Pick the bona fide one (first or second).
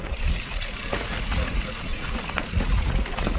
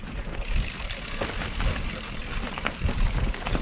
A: second